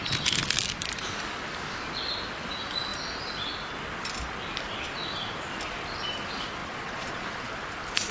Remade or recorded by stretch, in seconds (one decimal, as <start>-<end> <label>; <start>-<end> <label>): 0.0-6.6 recorded; 6.6-7.5 remade; 7.5-8.1 recorded